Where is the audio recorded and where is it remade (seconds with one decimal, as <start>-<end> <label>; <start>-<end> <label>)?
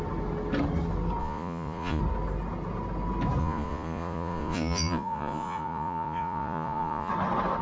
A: 0.0-1.2 recorded; 1.2-2.0 remade; 2.0-3.4 recorded; 3.4-7.1 remade; 7.1-7.6 recorded